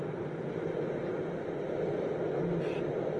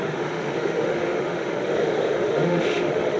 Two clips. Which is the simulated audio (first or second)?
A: second